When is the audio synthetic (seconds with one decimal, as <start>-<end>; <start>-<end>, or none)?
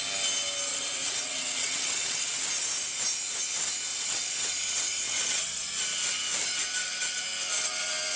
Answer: 0.7-2.4; 3.9-5.7